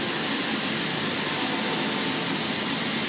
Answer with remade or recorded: recorded